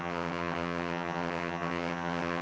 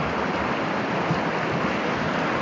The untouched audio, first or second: second